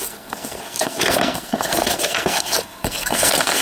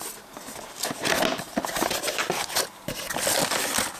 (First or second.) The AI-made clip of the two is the first